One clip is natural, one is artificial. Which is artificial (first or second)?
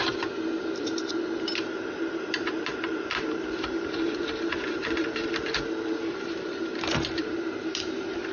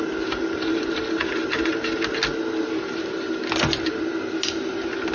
first